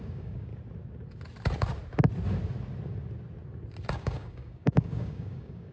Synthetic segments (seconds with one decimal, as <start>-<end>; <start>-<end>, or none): 0.0-0.5; 3.9-5.7